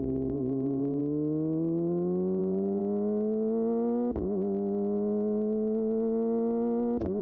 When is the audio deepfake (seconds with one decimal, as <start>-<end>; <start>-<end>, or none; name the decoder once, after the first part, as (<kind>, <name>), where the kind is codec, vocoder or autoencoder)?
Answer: 0.0-1.0 (vocoder, Vocos); 2.4-2.8

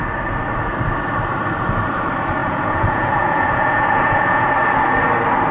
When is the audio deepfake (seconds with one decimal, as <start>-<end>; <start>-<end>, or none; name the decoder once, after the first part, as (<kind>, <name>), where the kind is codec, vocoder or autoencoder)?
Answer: 2.4-4.5 (vocoder, Vocos)